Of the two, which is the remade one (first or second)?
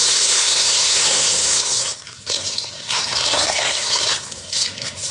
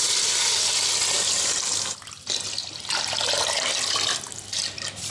first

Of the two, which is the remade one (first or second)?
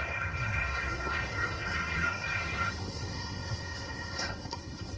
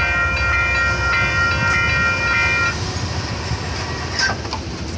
first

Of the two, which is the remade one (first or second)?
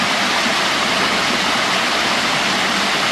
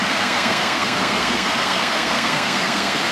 second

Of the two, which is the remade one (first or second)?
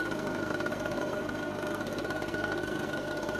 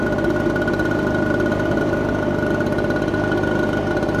first